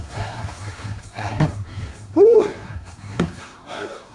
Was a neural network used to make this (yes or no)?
yes